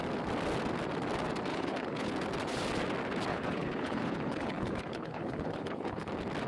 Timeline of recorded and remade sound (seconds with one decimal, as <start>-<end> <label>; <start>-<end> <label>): 0.0-1.5 recorded; 1.5-2.1 remade; 2.1-3.3 recorded; 3.3-6.1 remade; 6.1-6.5 recorded

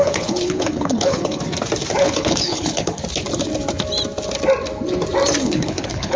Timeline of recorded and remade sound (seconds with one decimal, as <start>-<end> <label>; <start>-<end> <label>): 0.0-1.4 remade; 1.4-2.0 recorded; 2.0-3.0 remade; 3.0-5.4 recorded; 5.4-6.2 remade

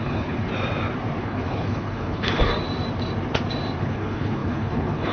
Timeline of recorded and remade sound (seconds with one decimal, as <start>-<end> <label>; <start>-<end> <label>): 0.0-0.5 remade; 0.5-1.2 recorded; 1.2-2.5 remade; 2.5-3.8 recorded; 3.8-5.1 remade

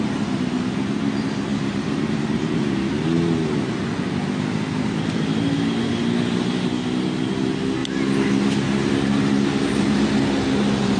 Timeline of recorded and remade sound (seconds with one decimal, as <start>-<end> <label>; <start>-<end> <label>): 0.0-11.0 recorded